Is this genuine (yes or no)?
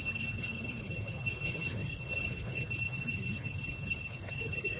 no